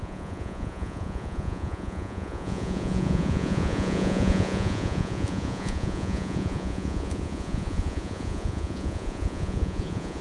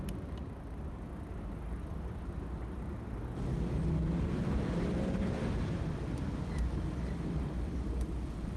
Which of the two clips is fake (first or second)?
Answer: first